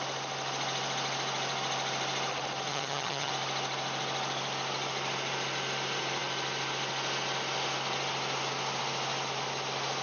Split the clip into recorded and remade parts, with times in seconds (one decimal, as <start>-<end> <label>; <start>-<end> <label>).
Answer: 0.0-2.7 recorded; 2.7-3.3 remade; 3.3-10.0 recorded